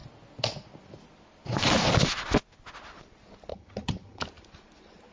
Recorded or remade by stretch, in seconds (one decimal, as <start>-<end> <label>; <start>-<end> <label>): 0.0-3.5 recorded; 3.5-4.2 remade; 4.2-5.1 recorded